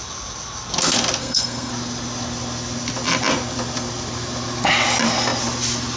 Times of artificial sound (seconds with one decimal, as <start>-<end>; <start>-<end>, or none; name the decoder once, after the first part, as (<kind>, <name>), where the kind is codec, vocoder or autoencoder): 1.2-1.7 (codec, SNAC)